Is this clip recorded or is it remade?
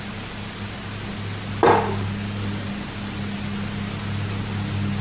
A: recorded